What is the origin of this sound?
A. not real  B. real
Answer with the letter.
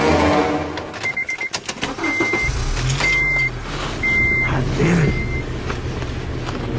B